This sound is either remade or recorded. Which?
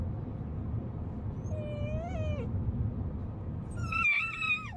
recorded